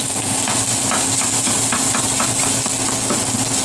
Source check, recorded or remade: recorded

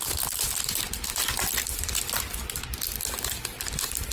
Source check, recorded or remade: recorded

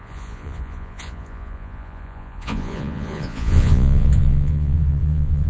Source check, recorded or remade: remade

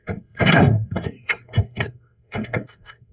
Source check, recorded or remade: remade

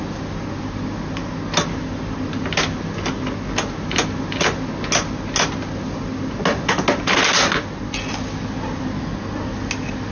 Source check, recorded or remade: recorded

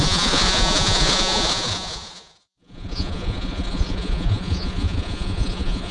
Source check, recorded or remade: remade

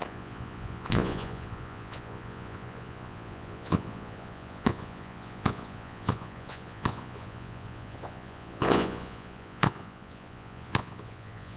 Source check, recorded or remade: remade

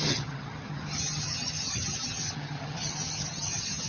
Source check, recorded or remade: remade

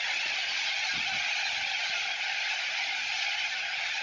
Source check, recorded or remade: recorded